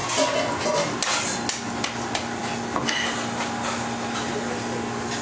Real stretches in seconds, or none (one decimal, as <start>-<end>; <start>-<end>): 0.0-5.2